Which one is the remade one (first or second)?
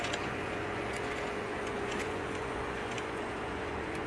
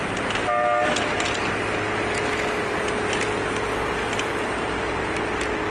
first